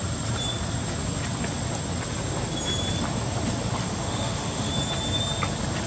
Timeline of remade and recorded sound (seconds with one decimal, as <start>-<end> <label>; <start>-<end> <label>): 0.0-3.9 recorded; 3.9-4.7 remade; 4.7-5.9 recorded